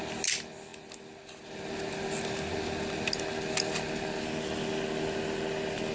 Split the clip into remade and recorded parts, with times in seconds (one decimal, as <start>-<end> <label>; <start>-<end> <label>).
0.0-5.9 recorded